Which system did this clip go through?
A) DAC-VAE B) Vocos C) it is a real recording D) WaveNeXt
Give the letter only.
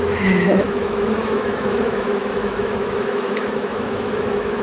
A